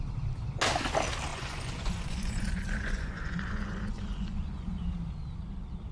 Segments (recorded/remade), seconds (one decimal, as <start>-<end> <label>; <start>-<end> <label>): 0.0-1.3 recorded; 1.3-4.8 remade; 4.8-5.9 recorded